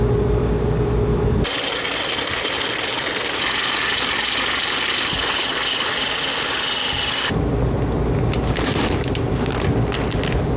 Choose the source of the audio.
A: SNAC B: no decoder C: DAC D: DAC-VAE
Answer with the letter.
B